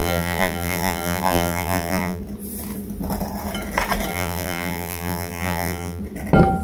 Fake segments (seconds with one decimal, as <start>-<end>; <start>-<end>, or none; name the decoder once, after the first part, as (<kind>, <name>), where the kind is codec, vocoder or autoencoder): 0.0-2.2 (vocoder, BigVGAN v2); 4.1-6.0